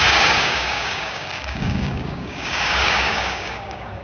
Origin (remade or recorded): remade